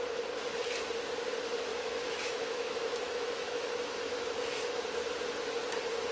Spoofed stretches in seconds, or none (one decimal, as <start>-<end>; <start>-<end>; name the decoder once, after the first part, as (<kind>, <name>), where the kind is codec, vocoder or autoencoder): 1.7-4.8 (autoencoder, DAC-VAE)